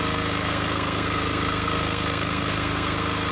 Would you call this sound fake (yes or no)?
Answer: yes